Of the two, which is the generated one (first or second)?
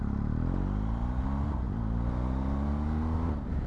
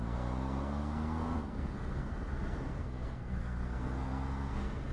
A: second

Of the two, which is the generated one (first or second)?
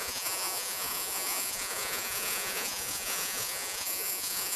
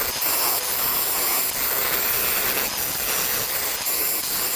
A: first